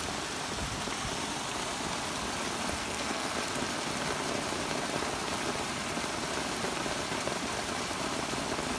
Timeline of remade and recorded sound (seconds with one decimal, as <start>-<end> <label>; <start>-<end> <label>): 0.0-2.8 recorded; 2.8-3.3 remade; 3.3-8.8 recorded